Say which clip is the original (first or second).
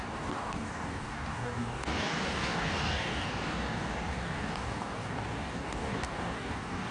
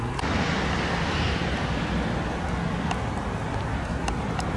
second